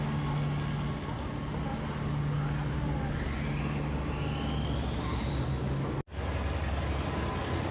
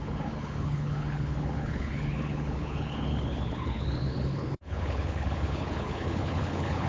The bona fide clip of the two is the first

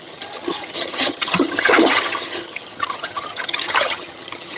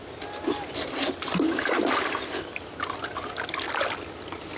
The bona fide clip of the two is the second